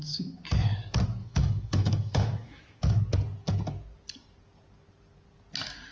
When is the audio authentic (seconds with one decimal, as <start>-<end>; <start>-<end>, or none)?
0.0-1.2; 3.0-5.9